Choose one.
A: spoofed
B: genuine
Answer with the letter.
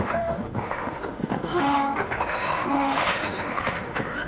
A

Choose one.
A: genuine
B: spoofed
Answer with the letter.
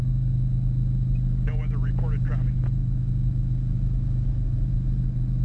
A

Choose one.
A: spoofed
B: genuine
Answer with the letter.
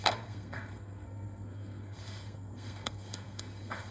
A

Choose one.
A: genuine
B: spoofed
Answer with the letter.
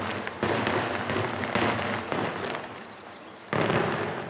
A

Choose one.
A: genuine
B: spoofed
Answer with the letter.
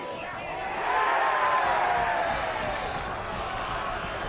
A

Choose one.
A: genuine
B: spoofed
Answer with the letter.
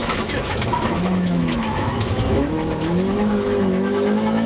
B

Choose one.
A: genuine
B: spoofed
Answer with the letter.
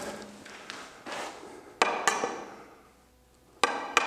A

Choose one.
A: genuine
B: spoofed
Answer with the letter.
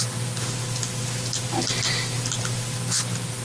A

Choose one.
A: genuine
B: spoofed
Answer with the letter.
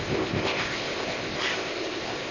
B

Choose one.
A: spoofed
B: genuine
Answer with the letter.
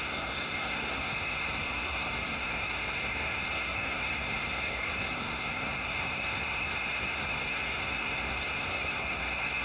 A